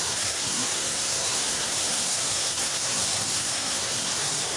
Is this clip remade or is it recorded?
remade